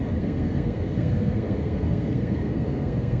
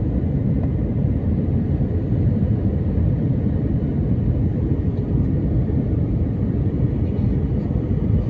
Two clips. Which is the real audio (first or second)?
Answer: second